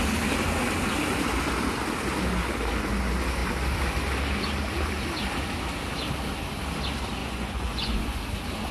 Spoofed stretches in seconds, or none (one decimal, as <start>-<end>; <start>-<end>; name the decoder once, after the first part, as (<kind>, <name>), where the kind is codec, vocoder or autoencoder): 7.2-8.2 (vocoder, Vocos)